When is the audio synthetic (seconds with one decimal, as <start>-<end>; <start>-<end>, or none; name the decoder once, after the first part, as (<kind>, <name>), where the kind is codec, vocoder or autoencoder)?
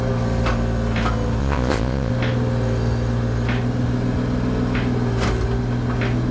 1.4-2.1 (vocoder, Vocos)